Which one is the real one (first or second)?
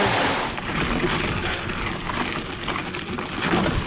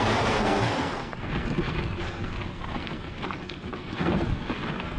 first